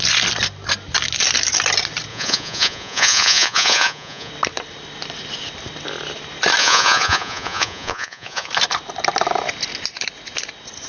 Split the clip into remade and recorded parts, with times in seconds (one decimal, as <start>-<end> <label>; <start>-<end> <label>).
0.0-2.1 recorded; 2.1-4.3 remade; 4.3-6.6 recorded; 6.6-8.5 remade; 8.5-10.9 recorded